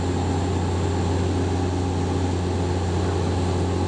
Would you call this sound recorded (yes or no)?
yes